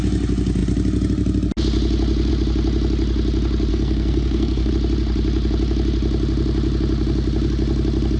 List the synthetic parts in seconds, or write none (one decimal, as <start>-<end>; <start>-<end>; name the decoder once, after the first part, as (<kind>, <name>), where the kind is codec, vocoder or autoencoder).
3.7-4.7 (codec, SNAC)